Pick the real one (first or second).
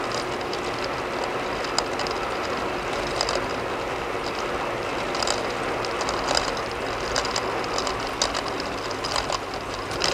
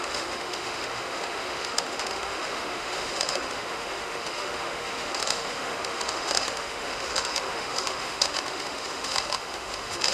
first